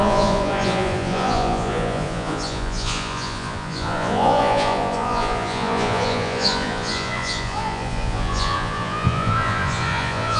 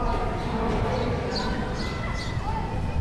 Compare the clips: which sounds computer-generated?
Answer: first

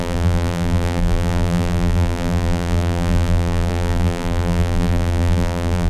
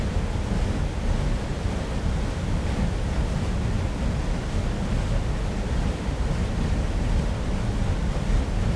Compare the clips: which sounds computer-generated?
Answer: first